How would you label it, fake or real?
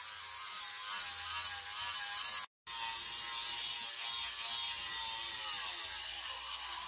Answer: real